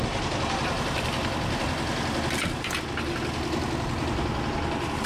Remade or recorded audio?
recorded